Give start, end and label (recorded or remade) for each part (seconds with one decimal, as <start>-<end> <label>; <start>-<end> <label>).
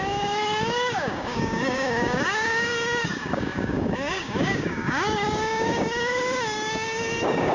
0.0-7.5 remade